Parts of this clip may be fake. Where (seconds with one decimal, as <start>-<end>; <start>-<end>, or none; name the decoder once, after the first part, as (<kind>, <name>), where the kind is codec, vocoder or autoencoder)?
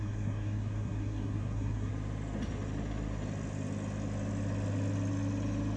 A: 0.0-1.9 (codec, SNAC)